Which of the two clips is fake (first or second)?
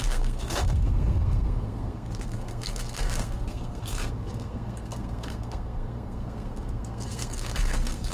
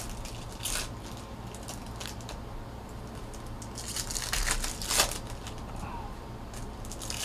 first